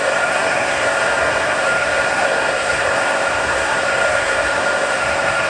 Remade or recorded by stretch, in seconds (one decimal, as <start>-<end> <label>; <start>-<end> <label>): 0.0-5.5 remade